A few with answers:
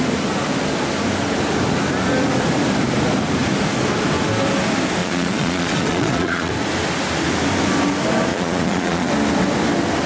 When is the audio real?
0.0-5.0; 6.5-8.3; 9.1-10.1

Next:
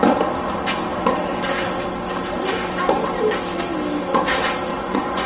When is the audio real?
0.0-4.7

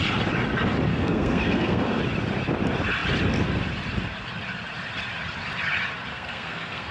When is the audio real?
0.0-0.9; 2.0-6.1

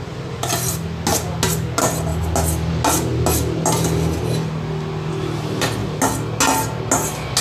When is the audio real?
0.0-7.4

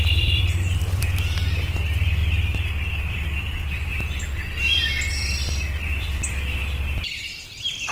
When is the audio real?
3.9-5.8